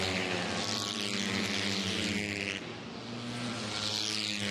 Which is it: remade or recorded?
recorded